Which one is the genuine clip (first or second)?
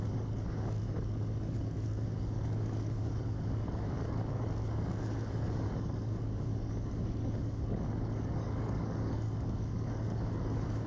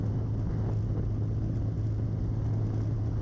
second